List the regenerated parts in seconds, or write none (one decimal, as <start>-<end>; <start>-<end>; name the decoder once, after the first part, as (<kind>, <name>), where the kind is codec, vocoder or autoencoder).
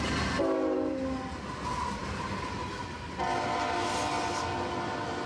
none